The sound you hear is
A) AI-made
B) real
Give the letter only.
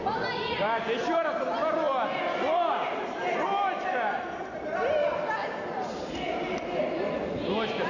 B